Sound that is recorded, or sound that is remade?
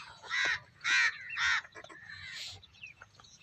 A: remade